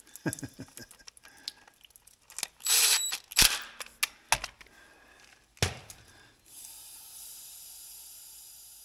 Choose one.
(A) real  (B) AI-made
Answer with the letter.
A